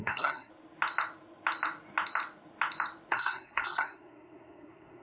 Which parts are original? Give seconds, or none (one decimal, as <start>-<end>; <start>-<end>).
0.5-3.1